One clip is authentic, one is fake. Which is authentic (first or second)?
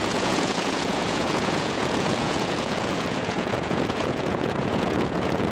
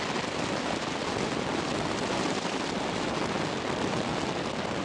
second